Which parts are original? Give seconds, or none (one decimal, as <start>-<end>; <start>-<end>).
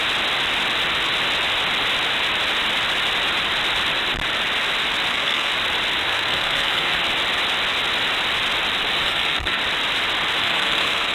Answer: 0.0-5.1; 5.5-6.0; 7.0-9.0; 9.6-10.4